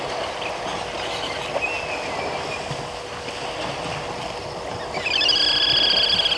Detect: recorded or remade recorded